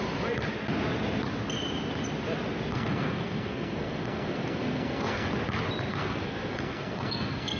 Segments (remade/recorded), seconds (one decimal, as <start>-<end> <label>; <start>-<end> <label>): 0.0-2.7 recorded; 2.7-5.3 remade; 5.3-5.9 recorded; 5.9-7.6 remade

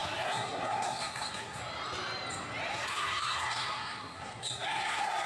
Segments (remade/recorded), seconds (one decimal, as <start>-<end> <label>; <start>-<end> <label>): 0.0-1.6 remade; 1.6-2.7 recorded; 2.7-5.3 remade

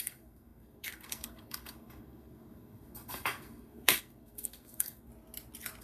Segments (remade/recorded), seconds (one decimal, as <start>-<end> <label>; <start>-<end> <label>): 0.0-5.1 remade; 5.1-5.8 recorded